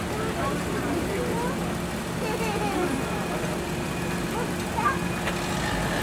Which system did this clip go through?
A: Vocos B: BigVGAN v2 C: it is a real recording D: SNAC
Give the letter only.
C